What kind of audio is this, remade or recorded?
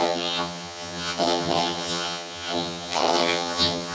remade